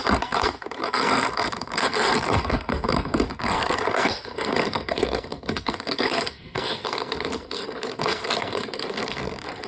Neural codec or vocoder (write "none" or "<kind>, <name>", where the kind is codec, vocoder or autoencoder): codec, SNAC